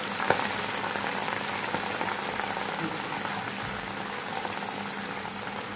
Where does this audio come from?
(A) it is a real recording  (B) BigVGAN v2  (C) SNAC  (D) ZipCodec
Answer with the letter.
A